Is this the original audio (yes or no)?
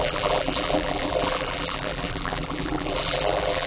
no